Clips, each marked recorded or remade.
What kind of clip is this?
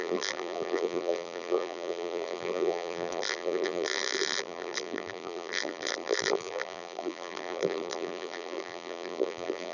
remade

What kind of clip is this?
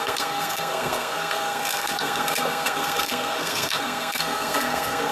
remade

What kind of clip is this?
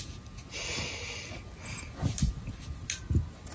recorded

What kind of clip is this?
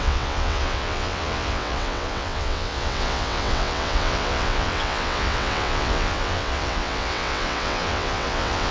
remade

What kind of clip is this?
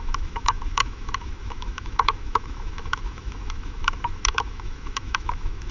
remade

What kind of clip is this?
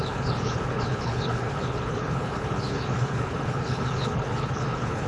remade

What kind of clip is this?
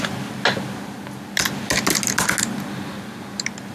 recorded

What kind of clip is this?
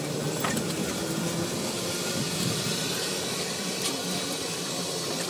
remade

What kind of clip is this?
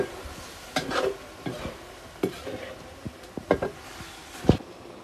recorded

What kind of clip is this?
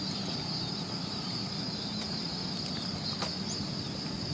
recorded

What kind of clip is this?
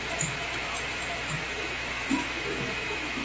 remade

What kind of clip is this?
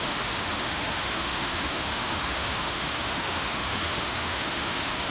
remade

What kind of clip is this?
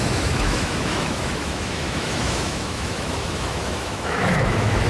remade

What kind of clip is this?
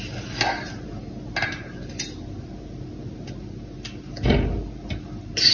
recorded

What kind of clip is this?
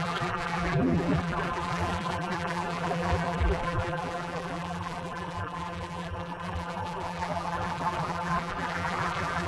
remade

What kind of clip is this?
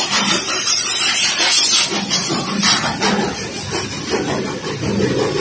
recorded